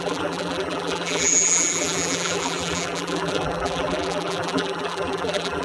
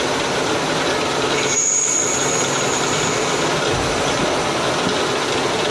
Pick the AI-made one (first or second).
first